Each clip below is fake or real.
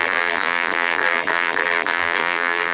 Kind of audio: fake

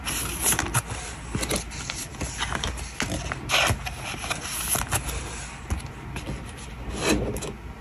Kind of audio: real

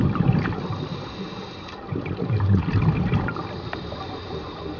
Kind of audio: real